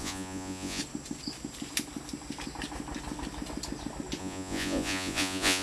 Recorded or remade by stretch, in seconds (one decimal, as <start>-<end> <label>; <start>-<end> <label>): 0.0-0.8 remade; 0.8-4.2 recorded; 4.2-5.6 remade